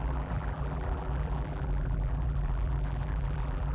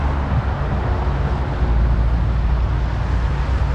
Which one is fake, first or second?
first